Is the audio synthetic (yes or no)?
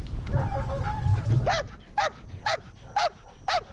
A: no